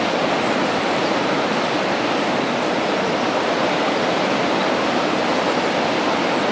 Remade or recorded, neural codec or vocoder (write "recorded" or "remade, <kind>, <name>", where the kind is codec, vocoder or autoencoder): recorded